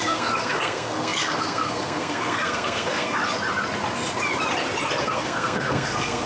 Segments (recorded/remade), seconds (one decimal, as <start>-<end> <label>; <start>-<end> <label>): 0.0-3.2 remade; 3.2-5.0 recorded; 5.0-6.3 remade